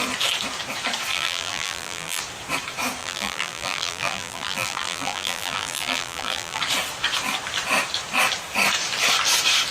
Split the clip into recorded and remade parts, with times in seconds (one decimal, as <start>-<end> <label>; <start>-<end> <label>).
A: 0.0-1.1 recorded; 1.1-2.2 remade; 2.2-3.0 recorded; 3.0-6.6 remade; 6.6-9.7 recorded